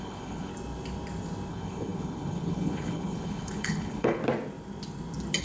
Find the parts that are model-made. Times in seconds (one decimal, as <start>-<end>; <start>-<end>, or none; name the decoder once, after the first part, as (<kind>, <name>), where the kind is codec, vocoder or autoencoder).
0.0-0.5 (codec, HILCodec); 1.5-4.2